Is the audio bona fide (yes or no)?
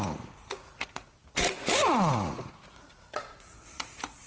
no